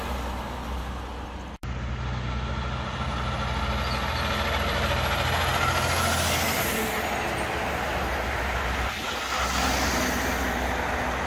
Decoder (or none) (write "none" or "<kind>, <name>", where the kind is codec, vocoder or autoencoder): none